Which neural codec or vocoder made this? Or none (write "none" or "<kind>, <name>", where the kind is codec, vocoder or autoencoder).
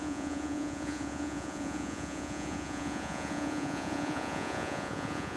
vocoder, Vocos